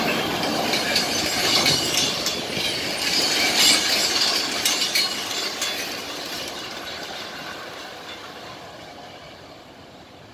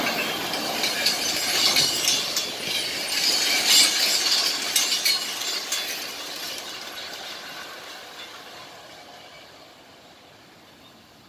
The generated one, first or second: first